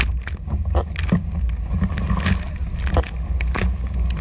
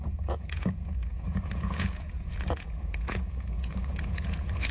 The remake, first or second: second